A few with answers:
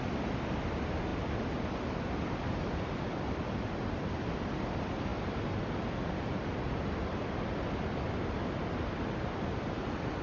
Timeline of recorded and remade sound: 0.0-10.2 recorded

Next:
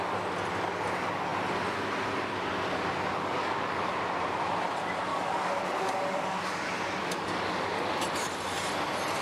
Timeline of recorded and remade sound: 0.0-3.1 recorded; 3.1-3.9 remade; 3.9-5.1 recorded; 5.1-6.5 remade; 6.5-7.0 recorded; 7.0-7.5 remade; 7.5-9.2 recorded

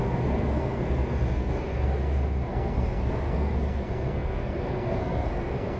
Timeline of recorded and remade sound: 0.0-5.8 remade

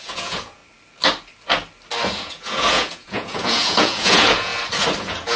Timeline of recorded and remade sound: 0.0-0.6 remade; 0.6-2.1 recorded; 2.1-4.5 remade; 4.5-5.0 recorded; 5.0-5.4 remade

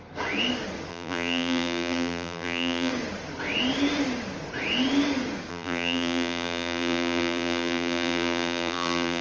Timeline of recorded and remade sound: 0.0-0.9 recorded; 0.9-2.9 remade; 2.9-5.5 recorded; 5.5-9.2 remade

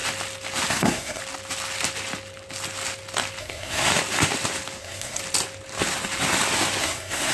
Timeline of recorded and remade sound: 0.0-0.7 recorded; 0.7-1.2 remade; 1.2-3.4 recorded; 3.4-3.9 remade; 3.9-4.8 recorded; 4.8-5.2 remade; 5.2-6.8 recorded; 6.8-7.3 remade